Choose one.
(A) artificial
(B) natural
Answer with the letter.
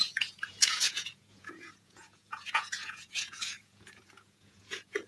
A